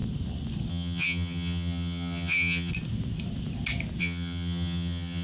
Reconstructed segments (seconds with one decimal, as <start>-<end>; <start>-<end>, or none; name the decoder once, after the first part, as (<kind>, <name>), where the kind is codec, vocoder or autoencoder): 0.7-2.7 (vocoder, HiFi-GAN); 4.0-5.2